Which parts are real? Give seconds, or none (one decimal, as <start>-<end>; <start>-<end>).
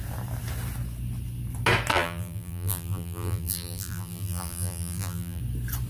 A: 0.0-1.9; 5.4-5.9